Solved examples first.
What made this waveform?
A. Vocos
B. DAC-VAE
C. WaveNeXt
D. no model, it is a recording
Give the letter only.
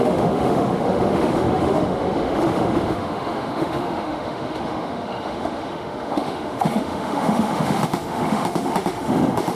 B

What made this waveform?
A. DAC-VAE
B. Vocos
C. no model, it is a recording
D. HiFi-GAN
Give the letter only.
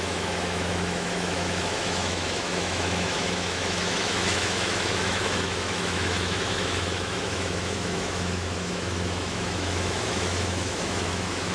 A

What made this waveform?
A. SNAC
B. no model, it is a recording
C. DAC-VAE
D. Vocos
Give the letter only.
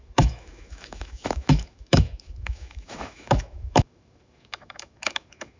C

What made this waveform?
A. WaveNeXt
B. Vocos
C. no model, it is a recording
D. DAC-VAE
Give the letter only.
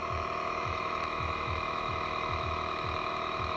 D